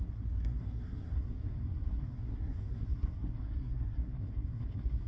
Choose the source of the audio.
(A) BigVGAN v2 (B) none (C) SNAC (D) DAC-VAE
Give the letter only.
C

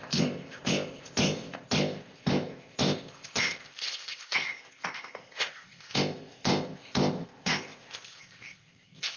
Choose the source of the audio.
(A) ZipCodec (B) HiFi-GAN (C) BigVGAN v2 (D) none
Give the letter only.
A